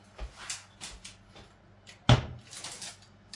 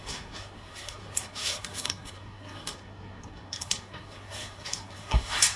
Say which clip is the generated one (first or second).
second